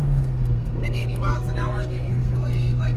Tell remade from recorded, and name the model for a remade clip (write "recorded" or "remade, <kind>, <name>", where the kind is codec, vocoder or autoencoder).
remade, codec, SNAC